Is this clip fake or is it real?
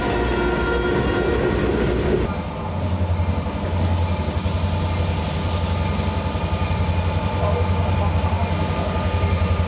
real